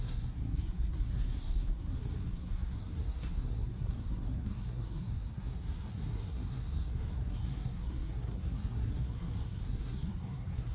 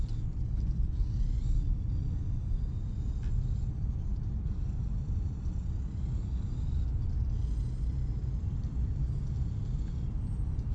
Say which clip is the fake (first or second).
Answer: first